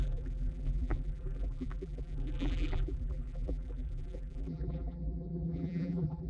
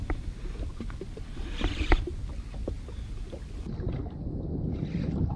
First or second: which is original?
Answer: second